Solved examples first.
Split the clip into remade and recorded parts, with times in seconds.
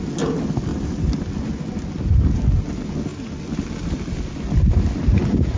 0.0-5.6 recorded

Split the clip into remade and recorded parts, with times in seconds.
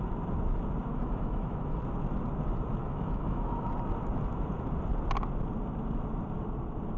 0.0-0.9 recorded; 0.9-1.8 remade; 1.8-2.8 recorded; 2.8-3.7 remade; 3.7-7.0 recorded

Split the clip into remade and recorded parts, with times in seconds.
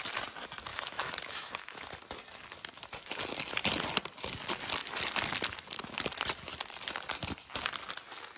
0.0-0.7 recorded; 0.7-1.9 remade; 1.9-8.4 recorded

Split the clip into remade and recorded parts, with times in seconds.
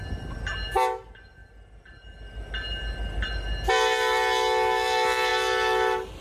0.0-6.2 recorded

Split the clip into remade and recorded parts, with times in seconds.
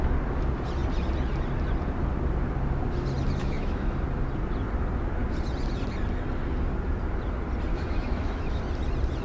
0.0-3.4 recorded; 3.4-4.0 remade; 4.0-7.7 recorded; 7.7-8.6 remade; 8.6-9.2 recorded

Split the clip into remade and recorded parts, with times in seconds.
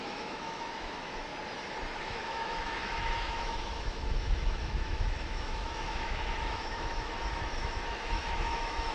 0.0-1.3 remade; 1.3-2.0 recorded; 2.0-8.9 remade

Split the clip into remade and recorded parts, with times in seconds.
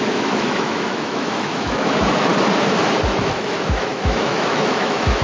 0.0-2.3 remade; 2.3-3.2 recorded; 3.2-5.2 remade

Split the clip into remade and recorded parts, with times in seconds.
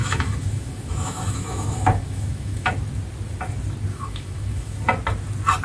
0.0-2.7 remade; 2.7-3.9 recorded; 3.9-4.8 remade; 4.8-5.6 recorded